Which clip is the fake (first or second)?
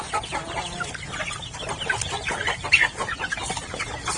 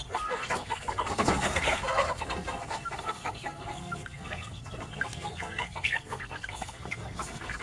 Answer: second